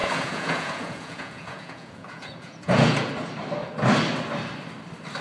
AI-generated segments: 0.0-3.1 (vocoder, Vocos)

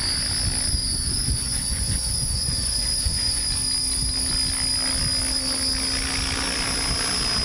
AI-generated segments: 0.8-3.5 (vocoder, Vocos)